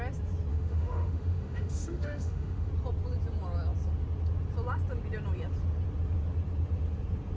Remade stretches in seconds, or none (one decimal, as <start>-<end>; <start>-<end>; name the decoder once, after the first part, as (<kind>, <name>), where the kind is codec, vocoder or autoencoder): 0.5-2.7 (autoencoder, DAC-VAE)